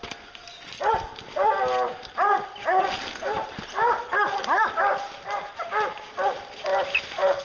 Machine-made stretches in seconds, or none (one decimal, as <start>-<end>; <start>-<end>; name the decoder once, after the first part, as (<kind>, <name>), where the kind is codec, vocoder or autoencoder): none